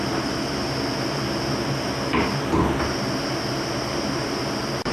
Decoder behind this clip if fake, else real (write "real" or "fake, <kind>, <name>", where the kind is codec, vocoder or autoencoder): real